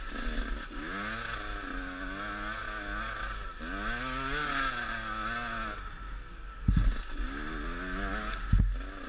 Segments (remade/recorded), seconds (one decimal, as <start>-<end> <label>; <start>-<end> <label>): 0.0-9.1 recorded